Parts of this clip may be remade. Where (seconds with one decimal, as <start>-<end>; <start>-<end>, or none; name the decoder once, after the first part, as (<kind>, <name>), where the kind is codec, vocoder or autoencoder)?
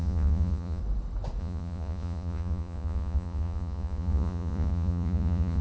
0.0-0.8 (vocoder, Vocos); 1.4-5.6